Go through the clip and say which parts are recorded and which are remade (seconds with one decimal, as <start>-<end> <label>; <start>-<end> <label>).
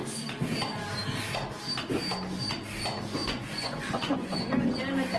0.0-3.2 recorded; 3.2-4.8 remade; 4.8-5.2 recorded